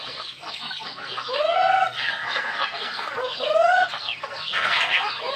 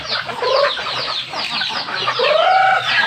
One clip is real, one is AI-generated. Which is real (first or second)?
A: second